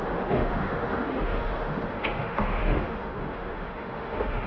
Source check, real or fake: fake